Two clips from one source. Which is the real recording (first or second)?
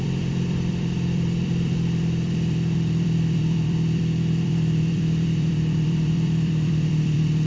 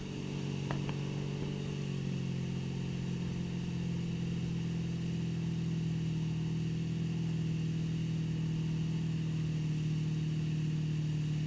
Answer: second